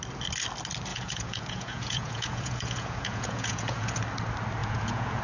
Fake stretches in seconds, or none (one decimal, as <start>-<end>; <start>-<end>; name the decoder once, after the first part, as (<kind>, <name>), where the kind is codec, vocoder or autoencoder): 0.9-4.0 (vocoder, Vocos); 4.6-5.2

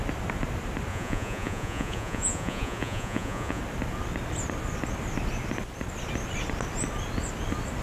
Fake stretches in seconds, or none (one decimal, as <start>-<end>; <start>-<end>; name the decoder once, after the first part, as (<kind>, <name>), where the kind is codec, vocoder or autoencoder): 0.9-3.6 (vocoder, Vocos)

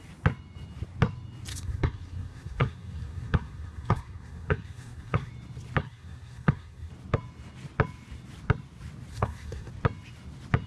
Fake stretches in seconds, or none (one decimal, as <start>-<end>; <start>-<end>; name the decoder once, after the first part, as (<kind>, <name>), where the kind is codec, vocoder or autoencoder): 1.5-5.3 (codec, SNAC); 5.8-6.9; 9.1-9.7

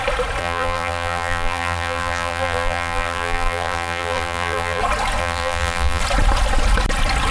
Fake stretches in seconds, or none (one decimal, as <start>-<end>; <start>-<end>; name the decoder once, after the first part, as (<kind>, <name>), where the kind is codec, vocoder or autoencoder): 0.4-4.8 (vocoder, BigVGAN v2); 5.2-6.0

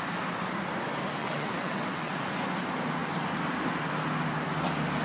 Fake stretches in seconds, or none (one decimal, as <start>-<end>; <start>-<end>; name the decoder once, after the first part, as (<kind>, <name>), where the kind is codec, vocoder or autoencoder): 1.2-2.1 (vocoder, WaveNeXt)